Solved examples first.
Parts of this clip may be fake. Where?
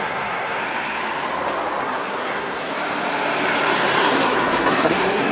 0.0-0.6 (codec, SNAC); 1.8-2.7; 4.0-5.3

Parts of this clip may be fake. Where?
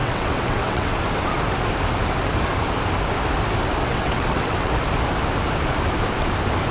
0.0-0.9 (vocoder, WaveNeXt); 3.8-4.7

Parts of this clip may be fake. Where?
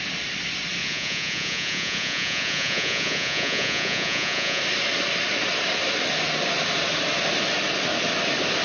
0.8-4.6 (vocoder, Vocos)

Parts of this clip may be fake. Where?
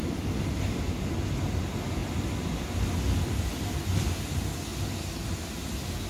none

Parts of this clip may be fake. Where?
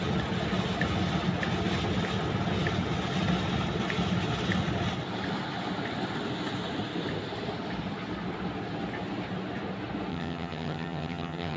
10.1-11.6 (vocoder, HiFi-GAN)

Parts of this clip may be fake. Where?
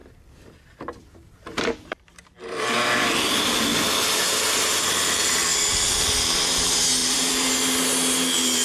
0.0-3.1 (vocoder, BigVGAN v2); 7.0-7.5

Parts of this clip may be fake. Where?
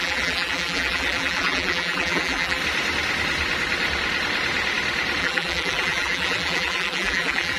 0.0-2.6 (vocoder, BigVGAN v2); 5.2-7.6